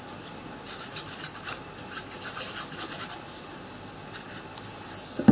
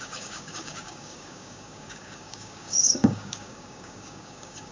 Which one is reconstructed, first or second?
second